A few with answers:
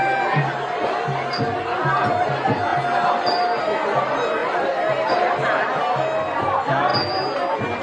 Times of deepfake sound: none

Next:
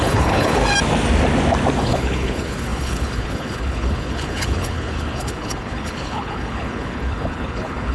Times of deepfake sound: 0.0-0.6 (codec, HILCodec); 1.8-7.9